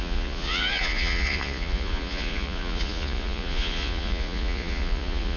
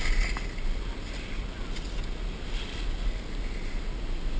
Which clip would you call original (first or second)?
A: second